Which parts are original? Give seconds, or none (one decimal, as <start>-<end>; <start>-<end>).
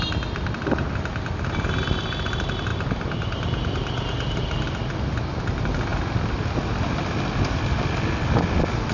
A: 0.0-8.9